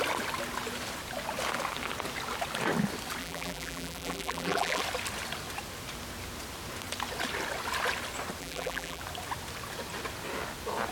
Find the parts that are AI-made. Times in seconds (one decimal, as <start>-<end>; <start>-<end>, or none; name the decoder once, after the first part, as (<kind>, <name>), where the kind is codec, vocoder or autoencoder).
3.2-4.8 (vocoder, BigVGAN v2); 8.4-9.0